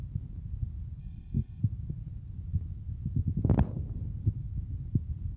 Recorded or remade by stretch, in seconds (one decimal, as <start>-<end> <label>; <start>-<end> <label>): 0.0-1.0 recorded; 1.0-1.6 remade; 1.6-5.4 recorded